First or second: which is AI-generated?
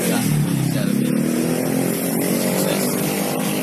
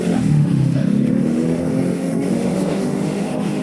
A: second